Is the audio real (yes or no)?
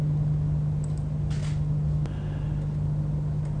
yes